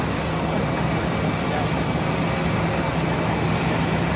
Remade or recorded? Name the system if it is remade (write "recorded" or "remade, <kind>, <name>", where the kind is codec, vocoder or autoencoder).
recorded